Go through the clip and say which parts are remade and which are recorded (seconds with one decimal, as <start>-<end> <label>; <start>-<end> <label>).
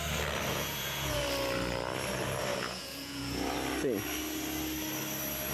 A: 0.0-0.5 recorded; 0.5-1.2 remade; 1.2-2.5 recorded; 2.5-3.5 remade; 3.5-5.5 recorded